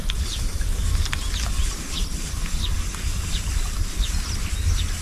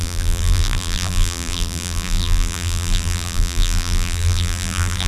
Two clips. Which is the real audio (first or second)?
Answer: first